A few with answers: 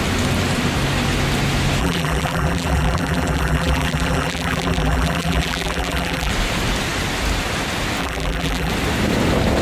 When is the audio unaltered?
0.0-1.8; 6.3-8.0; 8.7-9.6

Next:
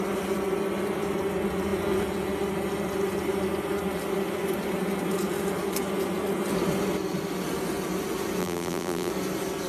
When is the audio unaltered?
0.0-8.4; 9.1-9.7

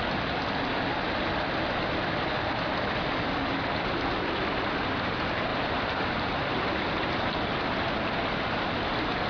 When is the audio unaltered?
0.0-5.5; 6.6-9.3

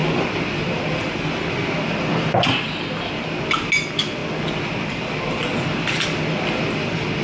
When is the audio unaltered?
1.6-7.2

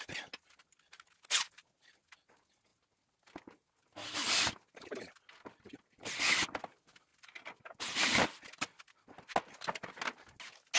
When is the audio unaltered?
0.0-10.8

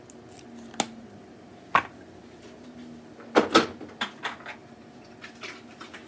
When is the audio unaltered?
0.0-4.6; 5.2-6.1